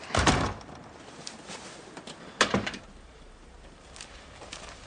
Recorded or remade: recorded